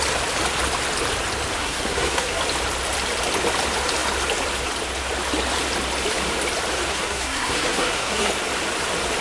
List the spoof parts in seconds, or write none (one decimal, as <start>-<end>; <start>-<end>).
1.6-2.4; 6.9-8.3